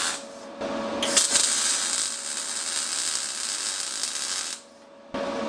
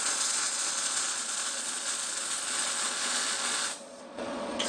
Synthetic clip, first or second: second